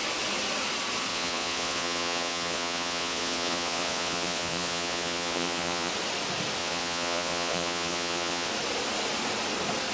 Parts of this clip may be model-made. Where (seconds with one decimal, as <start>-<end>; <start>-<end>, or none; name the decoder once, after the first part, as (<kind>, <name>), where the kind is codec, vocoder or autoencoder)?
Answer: 1.1-5.9 (vocoder, Vocos); 6.6-8.5